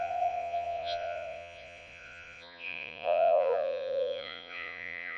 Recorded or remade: remade